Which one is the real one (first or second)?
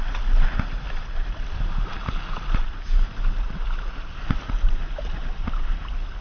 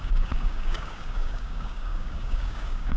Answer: first